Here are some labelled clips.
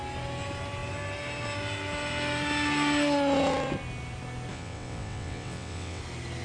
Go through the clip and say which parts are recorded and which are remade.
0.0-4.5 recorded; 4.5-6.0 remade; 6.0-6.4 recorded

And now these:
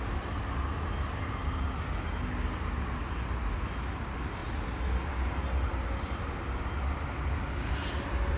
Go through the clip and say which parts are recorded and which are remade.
0.0-8.4 recorded

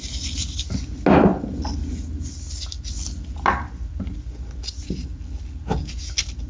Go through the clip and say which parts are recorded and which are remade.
0.0-6.5 recorded

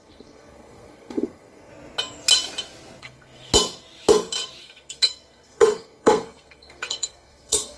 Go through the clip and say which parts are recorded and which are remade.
0.0-1.7 remade; 1.7-3.0 recorded; 3.0-3.5 remade; 3.5-4.6 recorded; 4.6-7.8 remade